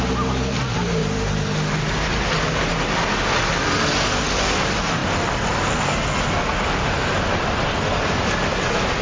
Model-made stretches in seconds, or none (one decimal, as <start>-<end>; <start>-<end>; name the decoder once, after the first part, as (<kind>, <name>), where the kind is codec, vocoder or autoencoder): none